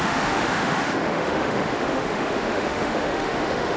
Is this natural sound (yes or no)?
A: no